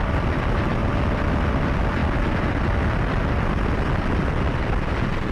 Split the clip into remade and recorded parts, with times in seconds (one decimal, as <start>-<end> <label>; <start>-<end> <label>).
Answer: 0.0-2.0 remade; 2.0-5.3 recorded